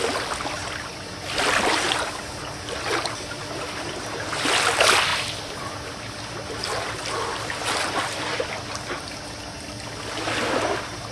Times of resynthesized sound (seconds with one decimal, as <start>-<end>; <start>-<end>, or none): 0.6-1.7; 5.1-8.5

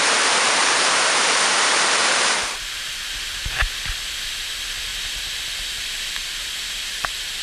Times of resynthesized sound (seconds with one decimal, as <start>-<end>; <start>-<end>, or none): 0.6-1.6; 2.0-3.8

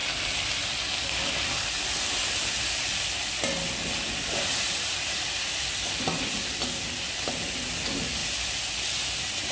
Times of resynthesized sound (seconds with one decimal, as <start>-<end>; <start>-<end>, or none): none

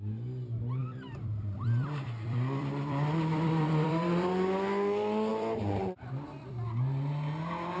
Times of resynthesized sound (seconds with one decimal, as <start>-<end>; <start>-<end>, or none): 0.8-4.3; 5.3-6.7